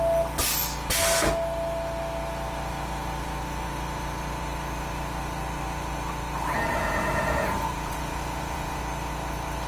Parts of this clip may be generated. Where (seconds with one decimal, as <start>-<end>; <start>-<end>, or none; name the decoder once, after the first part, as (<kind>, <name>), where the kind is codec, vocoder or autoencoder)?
6.7-8.8 (vocoder, Vocos)